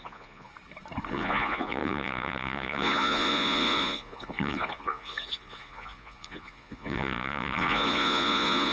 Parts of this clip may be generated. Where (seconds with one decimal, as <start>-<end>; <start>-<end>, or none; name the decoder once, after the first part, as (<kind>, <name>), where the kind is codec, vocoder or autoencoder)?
0.0-0.5 (vocoder, Vocos); 1.1-8.7